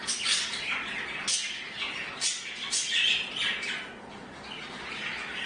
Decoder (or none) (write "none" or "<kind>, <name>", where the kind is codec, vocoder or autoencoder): none